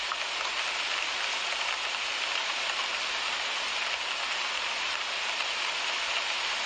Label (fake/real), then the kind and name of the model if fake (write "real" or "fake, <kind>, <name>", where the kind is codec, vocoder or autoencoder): real